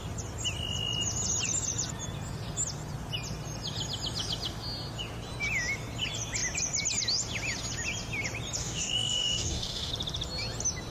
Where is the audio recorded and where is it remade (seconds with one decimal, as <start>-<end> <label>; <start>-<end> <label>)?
0.0-8.6 recorded; 8.6-9.9 remade; 9.9-10.9 recorded